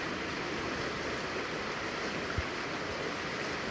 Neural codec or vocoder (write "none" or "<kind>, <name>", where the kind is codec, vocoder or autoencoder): none